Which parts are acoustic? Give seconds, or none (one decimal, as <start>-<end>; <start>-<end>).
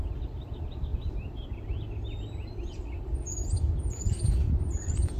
0.0-5.2